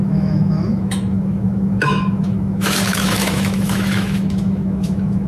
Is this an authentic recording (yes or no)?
no